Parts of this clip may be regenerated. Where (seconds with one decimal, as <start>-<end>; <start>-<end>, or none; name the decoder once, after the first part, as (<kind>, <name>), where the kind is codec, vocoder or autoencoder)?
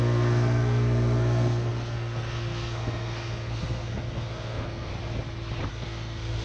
0.0-4.9 (codec, SNAC); 5.7-6.4